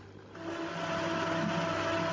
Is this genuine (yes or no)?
yes